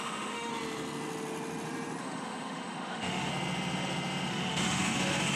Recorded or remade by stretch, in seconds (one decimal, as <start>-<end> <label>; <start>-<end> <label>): 0.0-0.5 remade; 0.5-2.0 recorded; 2.0-3.3 remade; 3.3-4.3 recorded; 4.3-5.4 remade